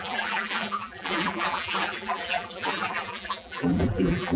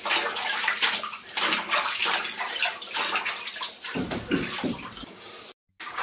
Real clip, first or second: second